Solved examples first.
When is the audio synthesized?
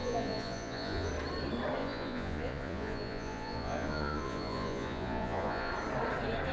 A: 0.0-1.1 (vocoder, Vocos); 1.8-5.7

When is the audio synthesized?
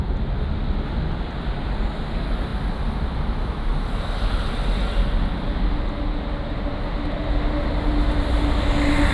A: none